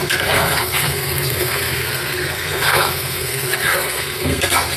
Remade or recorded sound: remade